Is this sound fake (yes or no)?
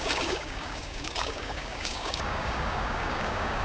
yes